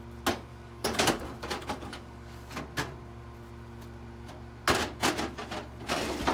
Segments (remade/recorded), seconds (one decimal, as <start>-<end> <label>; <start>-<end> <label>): 0.0-0.5 recorded; 0.5-2.5 remade; 2.5-6.3 recorded